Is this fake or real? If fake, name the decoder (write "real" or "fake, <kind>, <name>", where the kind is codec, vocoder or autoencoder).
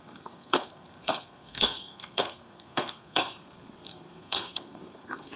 fake, codec, SNAC